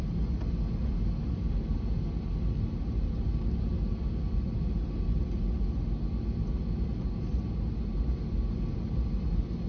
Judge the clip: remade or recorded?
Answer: recorded